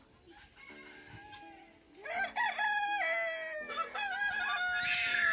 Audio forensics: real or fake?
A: real